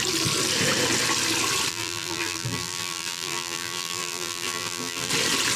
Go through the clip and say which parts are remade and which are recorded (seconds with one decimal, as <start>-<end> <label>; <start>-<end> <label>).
0.0-1.7 recorded; 1.7-5.1 remade; 5.1-5.6 recorded